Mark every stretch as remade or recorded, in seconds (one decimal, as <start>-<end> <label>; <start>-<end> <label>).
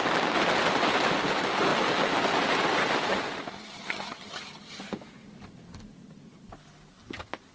0.0-3.5 recorded; 3.5-4.8 remade; 4.8-7.5 recorded